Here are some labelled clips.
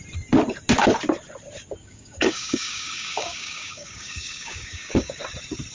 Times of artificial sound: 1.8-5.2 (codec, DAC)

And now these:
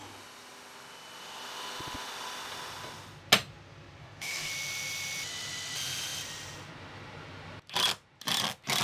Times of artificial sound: 4.0-4.5 (codec, DAC)

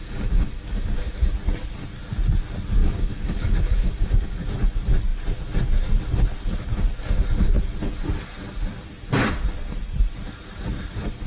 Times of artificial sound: 0.0-1.3 (codec, DAC); 2.8-4.5